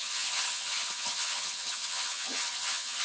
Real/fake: fake